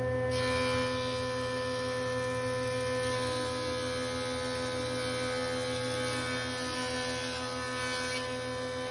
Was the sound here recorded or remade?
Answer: recorded